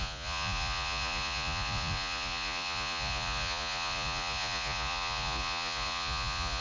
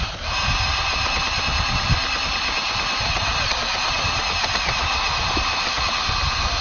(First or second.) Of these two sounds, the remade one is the first